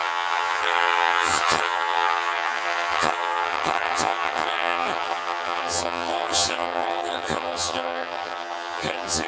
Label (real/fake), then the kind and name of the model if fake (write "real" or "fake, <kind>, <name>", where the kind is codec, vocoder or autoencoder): fake, vocoder, HiFi-GAN